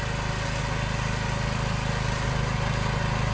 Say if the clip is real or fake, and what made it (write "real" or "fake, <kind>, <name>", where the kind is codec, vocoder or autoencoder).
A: real